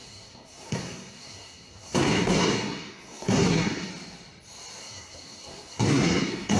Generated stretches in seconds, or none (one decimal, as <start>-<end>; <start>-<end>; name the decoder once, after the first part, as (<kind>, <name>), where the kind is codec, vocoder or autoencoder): 0.0-3.9 (codec, SNAC); 4.8-6.6